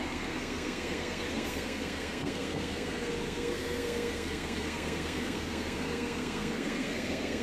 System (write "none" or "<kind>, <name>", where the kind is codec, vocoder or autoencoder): codec, SNAC